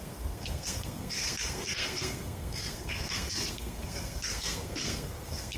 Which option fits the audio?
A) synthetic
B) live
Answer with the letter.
A